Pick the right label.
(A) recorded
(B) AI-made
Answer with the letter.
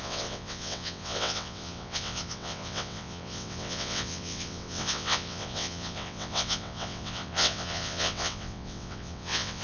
B